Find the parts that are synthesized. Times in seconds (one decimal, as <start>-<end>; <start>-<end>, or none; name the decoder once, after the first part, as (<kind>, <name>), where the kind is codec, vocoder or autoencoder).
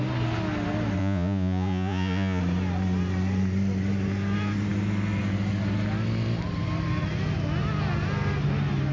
1.0-2.4 (vocoder, Vocos)